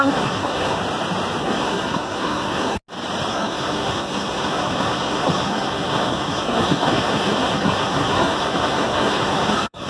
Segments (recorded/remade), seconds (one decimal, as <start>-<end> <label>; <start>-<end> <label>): 0.0-0.8 remade; 0.8-1.4 recorded; 1.4-2.8 remade; 2.8-3.3 recorded; 3.3-9.9 remade